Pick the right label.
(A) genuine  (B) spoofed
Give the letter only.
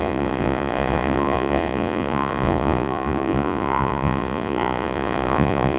B